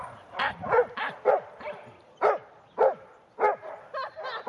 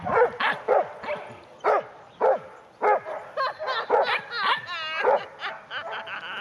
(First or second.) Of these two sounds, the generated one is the first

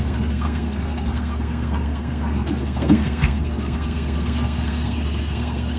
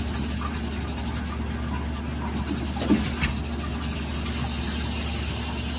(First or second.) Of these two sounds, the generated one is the first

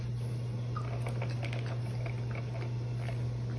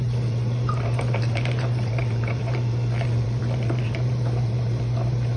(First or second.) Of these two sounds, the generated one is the second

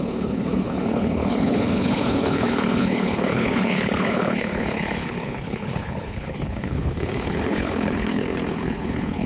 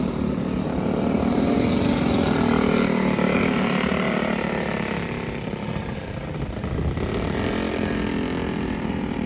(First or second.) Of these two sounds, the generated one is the first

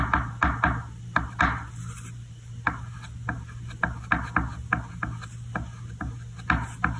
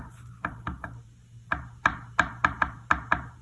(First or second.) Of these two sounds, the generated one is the second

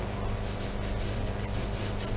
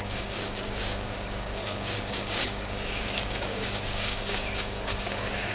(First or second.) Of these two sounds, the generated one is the second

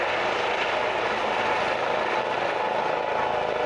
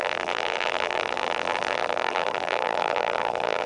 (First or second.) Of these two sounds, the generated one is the second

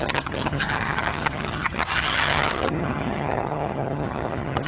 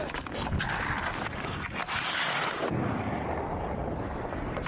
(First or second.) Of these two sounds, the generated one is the first